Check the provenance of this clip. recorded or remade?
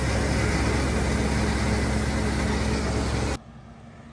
recorded